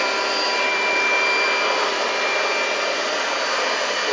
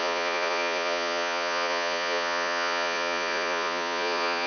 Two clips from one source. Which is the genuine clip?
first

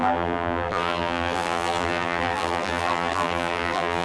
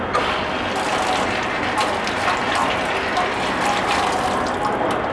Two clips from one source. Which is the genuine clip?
second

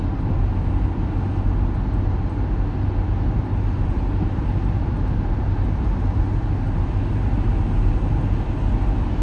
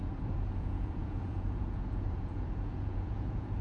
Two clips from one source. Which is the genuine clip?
first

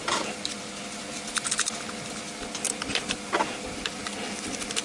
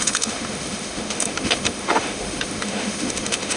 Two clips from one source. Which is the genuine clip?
first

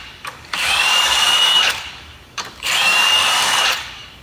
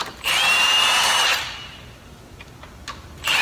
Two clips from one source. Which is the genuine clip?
second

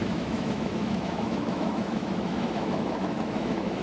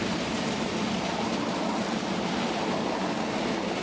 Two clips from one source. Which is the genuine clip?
second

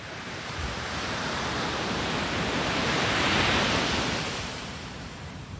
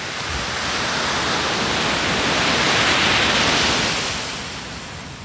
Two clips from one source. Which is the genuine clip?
second